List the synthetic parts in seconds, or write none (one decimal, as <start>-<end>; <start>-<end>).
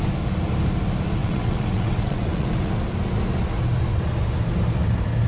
1.2-2.7